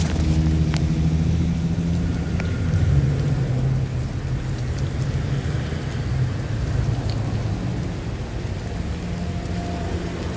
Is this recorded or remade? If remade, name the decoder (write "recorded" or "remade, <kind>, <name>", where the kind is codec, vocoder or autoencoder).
recorded